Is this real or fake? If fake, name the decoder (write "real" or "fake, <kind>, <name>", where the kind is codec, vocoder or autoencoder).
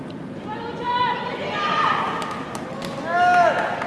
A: real